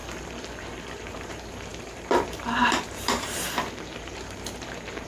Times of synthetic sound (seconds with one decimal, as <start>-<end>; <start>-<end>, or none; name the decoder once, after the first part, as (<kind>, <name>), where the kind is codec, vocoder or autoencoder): 0.6-5.1 (vocoder, BigVGAN v2)